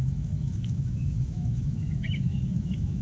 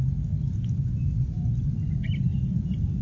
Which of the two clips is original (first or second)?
second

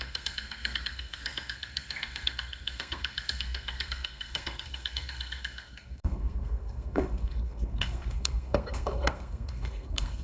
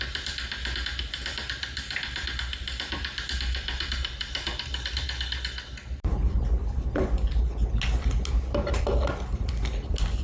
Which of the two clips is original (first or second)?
second